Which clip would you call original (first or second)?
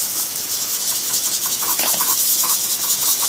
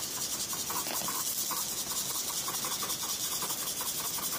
second